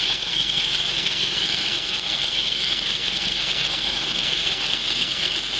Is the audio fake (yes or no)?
yes